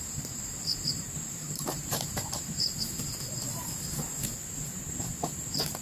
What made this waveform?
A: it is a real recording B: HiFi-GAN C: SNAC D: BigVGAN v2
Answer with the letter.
D